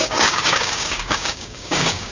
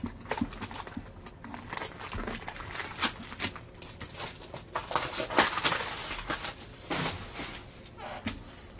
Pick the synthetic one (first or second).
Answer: first